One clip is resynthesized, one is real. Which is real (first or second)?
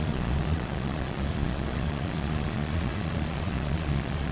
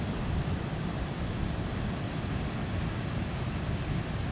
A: second